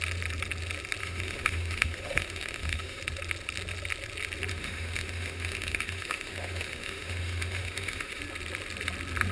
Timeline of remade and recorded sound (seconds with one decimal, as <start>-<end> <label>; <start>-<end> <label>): 0.0-1.0 recorded; 1.0-3.0 remade; 3.0-4.5 recorded; 4.5-8.2 remade; 8.2-9.3 recorded